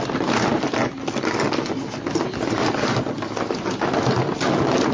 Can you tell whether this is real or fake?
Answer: real